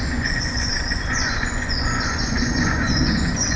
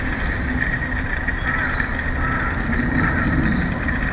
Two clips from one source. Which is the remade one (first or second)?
first